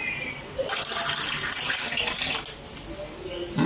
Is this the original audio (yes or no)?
yes